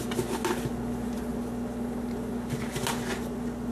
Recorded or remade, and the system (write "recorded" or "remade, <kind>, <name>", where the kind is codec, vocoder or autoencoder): recorded